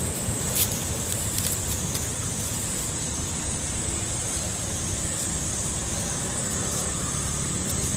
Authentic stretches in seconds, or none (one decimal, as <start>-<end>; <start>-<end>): 5.8-6.9

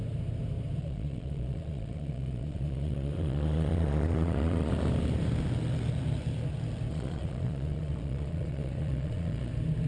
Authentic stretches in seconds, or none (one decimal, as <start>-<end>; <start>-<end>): 0.0-0.8; 4.7-6.9; 9.5-9.9

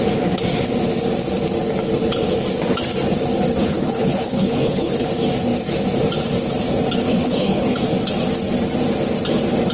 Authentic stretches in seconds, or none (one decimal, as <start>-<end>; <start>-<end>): 0.0-3.6; 5.1-7.1; 7.8-9.7

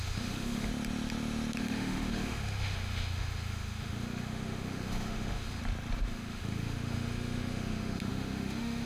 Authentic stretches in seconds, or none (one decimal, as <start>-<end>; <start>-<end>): 0.7-1.6; 5.6-6.1

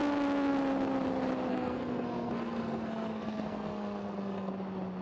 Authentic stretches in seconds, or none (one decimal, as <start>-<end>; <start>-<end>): 0.0-1.5; 4.5-5.0

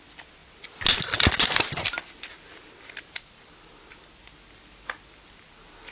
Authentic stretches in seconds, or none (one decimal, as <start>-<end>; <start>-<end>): 0.0-5.9